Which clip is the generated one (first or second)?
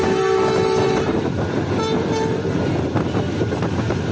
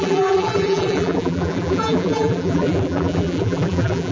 second